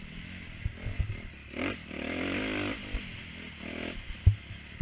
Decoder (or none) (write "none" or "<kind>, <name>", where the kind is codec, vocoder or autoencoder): none